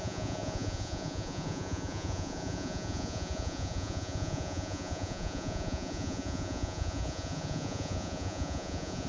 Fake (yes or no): yes